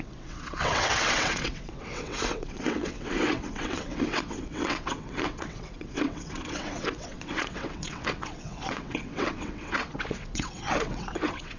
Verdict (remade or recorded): remade